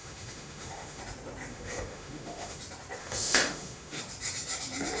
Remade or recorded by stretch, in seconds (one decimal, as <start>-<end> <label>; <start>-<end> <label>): 0.0-1.0 remade; 1.0-1.5 recorded; 1.5-2.6 remade; 2.6-3.0 recorded; 3.0-4.0 remade; 4.0-5.0 recorded